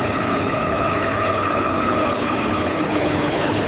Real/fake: fake